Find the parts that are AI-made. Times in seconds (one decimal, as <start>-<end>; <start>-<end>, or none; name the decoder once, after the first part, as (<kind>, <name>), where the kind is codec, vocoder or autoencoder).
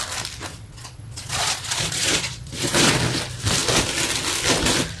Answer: 0.5-2.9 (vocoder, Vocos)